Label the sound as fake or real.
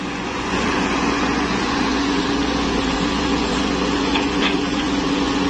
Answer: fake